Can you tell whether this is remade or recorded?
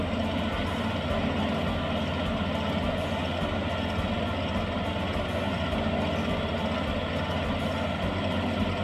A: recorded